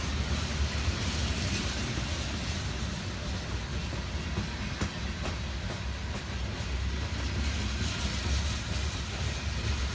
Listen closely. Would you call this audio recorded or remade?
recorded